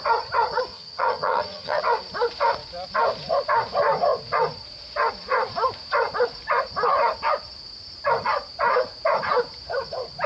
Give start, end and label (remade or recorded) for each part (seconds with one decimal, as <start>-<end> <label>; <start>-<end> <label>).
0.0-0.7 recorded; 0.7-1.8 remade; 1.8-10.3 recorded

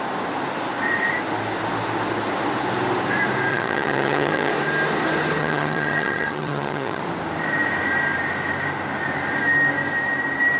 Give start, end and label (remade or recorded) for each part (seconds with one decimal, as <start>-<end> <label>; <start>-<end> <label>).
0.0-3.5 recorded; 3.5-4.5 remade; 4.5-5.4 recorded; 5.4-7.0 remade; 7.0-10.6 recorded

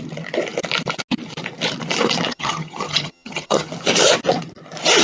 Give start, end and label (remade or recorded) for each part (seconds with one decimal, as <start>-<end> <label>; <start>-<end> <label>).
0.0-2.3 recorded; 2.3-3.7 remade; 3.7-5.0 recorded

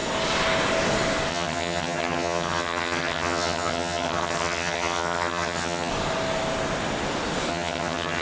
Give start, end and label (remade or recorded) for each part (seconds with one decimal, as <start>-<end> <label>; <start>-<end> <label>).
0.0-1.3 recorded; 1.3-5.9 remade; 5.9-7.5 recorded; 7.5-8.2 remade

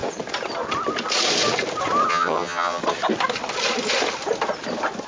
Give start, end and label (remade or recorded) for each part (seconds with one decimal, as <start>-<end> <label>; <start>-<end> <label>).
0.0-2.1 recorded; 2.1-2.8 remade; 2.8-5.1 recorded

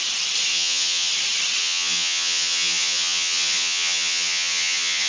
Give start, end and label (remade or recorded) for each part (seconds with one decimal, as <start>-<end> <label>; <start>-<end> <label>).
0.0-0.5 recorded; 0.5-1.1 remade; 1.1-1.6 recorded; 1.6-5.1 remade

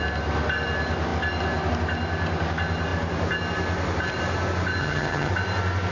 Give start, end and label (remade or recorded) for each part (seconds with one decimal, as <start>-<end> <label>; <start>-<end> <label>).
0.0-4.8 recorded; 4.8-5.3 remade; 5.3-5.9 recorded

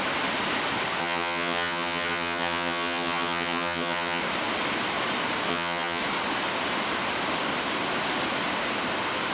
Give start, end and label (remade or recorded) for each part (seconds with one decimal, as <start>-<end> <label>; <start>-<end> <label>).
0.0-1.0 recorded; 1.0-4.2 remade; 4.2-5.5 recorded; 5.5-6.0 remade; 6.0-9.3 recorded